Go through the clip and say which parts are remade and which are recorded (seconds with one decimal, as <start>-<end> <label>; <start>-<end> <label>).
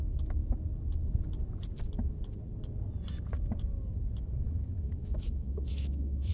0.0-0.4 remade; 0.4-4.2 recorded; 4.2-6.3 remade